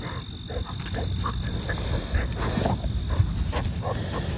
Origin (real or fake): real